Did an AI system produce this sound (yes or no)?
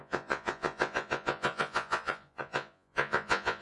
yes